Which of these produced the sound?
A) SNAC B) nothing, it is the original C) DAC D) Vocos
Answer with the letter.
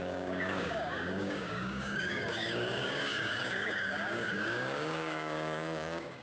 C